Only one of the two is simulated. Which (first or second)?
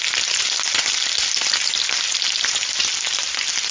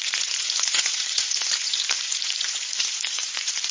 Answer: second